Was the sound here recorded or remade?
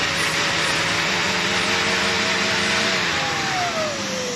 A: recorded